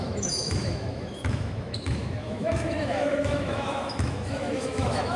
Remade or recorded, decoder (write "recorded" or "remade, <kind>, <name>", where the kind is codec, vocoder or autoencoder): remade, autoencoder, DAC-VAE